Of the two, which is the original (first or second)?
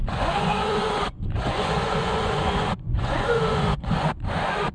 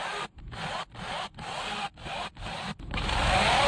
second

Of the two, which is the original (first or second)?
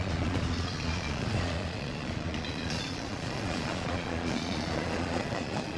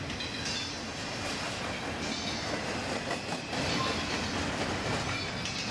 second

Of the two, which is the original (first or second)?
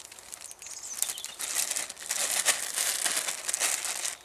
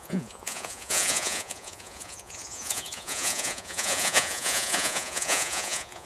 first